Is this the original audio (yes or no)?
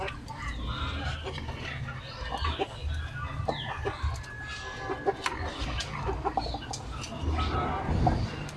yes